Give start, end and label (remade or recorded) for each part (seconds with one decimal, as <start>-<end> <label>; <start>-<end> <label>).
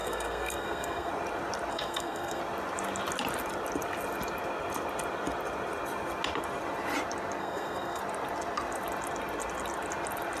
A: 0.0-1.1 remade; 1.1-1.7 recorded; 1.7-2.4 remade; 2.4-7.4 recorded; 7.4-8.0 remade; 8.0-10.4 recorded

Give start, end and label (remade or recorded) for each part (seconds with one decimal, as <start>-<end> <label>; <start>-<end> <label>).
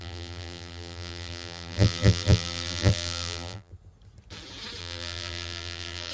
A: 0.0-3.7 remade; 3.7-4.8 recorded; 4.8-6.1 remade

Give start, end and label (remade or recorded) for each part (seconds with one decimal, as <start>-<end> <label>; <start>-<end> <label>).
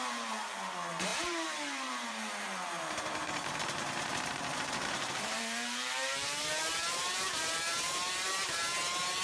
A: 0.0-9.2 remade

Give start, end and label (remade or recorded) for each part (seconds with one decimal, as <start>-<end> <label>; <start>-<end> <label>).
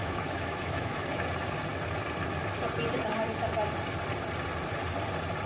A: 0.0-1.1 remade; 1.1-5.5 recorded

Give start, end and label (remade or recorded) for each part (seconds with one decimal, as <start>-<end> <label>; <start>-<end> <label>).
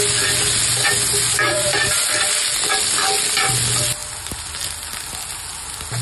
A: 0.0-1.1 recorded; 1.1-2.0 remade; 2.0-6.0 recorded